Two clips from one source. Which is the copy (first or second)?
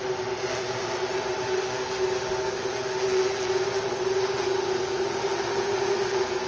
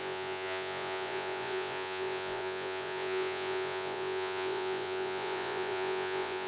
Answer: second